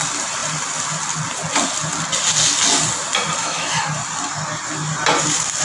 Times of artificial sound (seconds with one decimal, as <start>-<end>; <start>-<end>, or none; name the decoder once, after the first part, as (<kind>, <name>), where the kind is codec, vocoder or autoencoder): 3.4-3.9 (autoencoder, DAC-VAE)